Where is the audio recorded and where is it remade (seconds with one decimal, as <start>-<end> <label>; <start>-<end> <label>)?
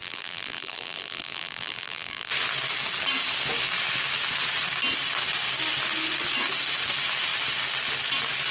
0.0-2.3 remade; 2.3-8.5 recorded